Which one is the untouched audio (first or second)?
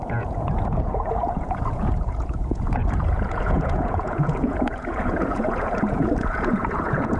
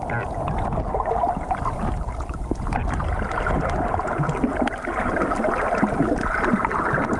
second